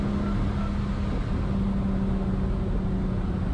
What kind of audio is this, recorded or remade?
recorded